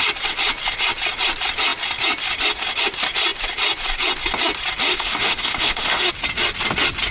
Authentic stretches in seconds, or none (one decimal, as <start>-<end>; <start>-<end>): 0.0-4.9; 6.1-7.1